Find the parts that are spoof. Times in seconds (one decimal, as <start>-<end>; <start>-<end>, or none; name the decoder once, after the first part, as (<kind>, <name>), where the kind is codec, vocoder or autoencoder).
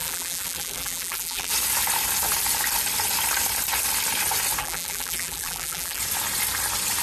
0.0-1.5 (vocoder, BigVGAN v2); 4.6-6.0